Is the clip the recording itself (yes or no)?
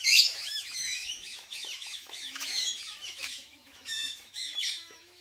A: no